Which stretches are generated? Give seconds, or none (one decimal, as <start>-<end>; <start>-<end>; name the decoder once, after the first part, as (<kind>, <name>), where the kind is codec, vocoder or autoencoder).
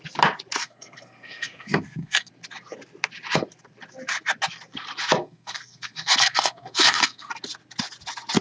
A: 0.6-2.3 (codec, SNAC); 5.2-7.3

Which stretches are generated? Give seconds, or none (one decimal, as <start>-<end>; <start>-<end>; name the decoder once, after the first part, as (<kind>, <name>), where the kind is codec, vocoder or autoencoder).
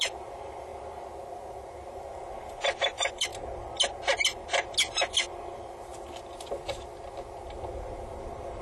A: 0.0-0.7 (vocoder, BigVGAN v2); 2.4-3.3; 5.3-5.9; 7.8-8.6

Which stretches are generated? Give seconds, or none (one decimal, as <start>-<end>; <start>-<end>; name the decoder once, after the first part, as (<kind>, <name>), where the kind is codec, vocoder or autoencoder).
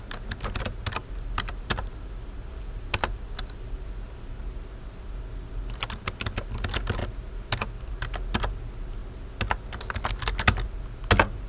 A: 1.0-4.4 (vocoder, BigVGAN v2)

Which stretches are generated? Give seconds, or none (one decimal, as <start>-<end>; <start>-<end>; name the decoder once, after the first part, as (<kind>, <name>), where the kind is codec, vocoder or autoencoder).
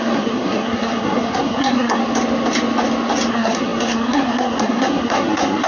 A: 0.0-2.0 (codec, SNAC); 3.3-5.7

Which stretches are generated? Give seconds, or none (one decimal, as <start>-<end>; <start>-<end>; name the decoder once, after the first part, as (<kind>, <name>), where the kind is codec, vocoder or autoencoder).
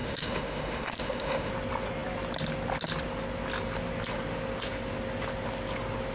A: 0.0-1.5 (autoencoder, DAC-VAE)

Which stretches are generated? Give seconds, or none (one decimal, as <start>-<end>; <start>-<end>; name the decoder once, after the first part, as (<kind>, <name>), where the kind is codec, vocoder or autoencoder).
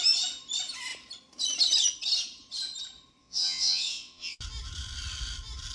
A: 3.2-4.4 (vocoder, WaveNeXt)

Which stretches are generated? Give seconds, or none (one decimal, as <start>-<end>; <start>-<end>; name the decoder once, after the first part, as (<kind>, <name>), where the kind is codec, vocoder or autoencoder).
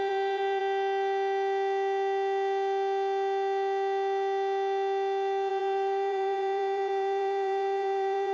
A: 0.0-0.6 (vocoder, BigVGAN v2); 5.5-8.3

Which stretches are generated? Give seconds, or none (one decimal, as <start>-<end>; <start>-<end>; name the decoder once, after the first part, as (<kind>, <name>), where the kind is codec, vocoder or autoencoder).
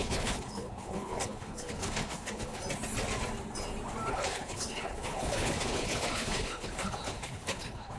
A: 0.0-2.6 (codec, HILCodec); 4.1-8.0